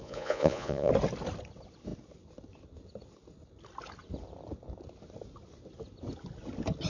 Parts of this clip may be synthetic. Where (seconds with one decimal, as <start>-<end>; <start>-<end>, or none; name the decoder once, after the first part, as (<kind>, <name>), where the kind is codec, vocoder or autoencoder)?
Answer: 0.0-0.9 (vocoder, Vocos)